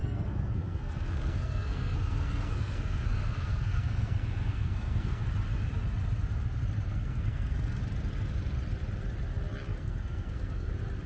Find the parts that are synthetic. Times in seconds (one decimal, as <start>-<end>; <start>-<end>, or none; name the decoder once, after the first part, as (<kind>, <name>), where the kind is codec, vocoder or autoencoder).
0.0-5.2 (codec, SNAC); 6.9-7.8; 9.7-10.7